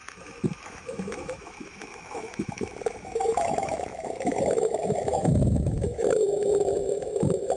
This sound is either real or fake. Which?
fake